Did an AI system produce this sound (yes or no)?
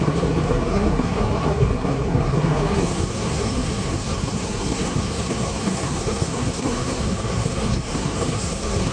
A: yes